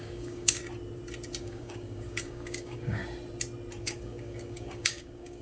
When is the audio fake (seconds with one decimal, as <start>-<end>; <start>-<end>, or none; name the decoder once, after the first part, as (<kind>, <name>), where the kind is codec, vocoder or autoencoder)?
0.0-0.6 (codec, DAC); 1.4-3.0; 3.8-5.4